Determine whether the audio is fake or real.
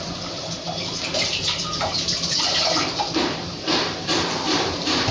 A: fake